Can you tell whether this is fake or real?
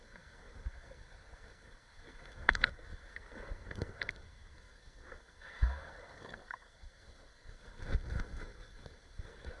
fake